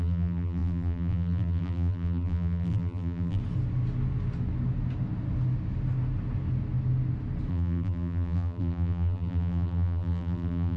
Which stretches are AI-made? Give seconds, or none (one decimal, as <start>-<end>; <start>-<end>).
0.0-3.4; 7.5-10.8

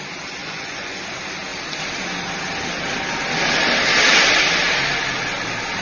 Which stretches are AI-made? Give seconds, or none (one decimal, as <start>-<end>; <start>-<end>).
0.4-1.0

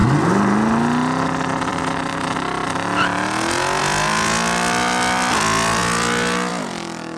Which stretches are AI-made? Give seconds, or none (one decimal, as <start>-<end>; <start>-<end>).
none

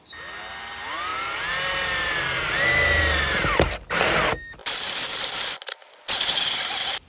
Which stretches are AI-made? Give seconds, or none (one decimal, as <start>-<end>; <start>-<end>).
none

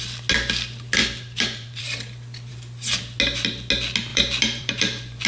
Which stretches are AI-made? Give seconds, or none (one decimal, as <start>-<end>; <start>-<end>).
1.0-1.8; 4.1-4.8

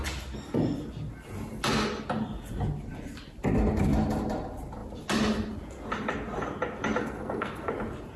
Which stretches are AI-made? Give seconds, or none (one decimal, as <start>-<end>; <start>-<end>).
7.0-7.7

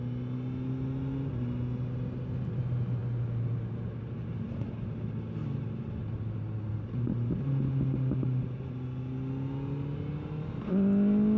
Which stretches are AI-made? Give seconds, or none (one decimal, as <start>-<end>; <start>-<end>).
none

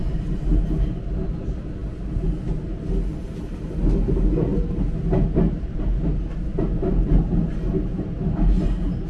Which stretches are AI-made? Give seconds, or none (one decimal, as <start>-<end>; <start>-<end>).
none